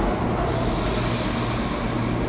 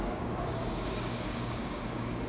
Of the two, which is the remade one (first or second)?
second